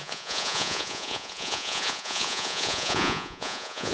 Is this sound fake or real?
fake